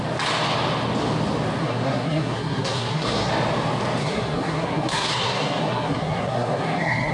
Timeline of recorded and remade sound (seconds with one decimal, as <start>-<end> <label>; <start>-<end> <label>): 0.0-1.6 recorded; 1.6-3.3 remade; 3.3-4.0 recorded; 4.0-7.1 remade

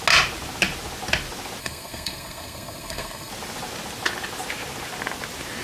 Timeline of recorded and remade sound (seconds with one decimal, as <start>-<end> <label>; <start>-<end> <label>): 0.0-1.6 recorded; 1.6-3.3 remade; 3.3-5.6 recorded

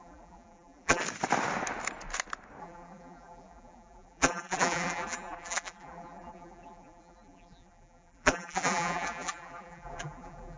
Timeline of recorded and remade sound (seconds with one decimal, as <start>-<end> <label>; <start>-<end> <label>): 0.0-1.0 remade; 1.0-2.6 recorded; 2.6-10.6 remade

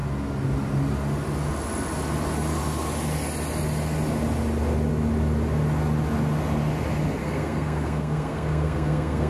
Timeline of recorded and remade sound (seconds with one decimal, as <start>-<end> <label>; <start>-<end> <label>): 0.0-7.2 recorded; 7.2-9.3 remade

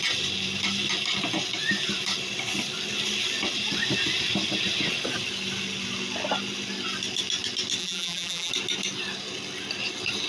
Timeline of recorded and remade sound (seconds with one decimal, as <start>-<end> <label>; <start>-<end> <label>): 0.0-7.8 recorded; 7.8-8.5 remade; 8.5-10.3 recorded

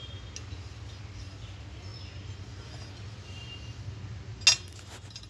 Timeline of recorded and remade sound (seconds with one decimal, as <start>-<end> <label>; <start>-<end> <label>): 0.0-5.3 recorded